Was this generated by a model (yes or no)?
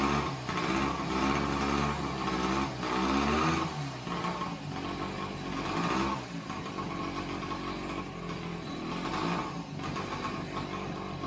no